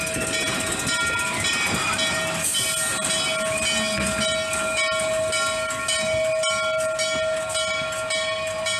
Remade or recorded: recorded